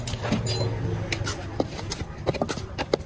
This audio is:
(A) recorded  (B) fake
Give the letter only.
A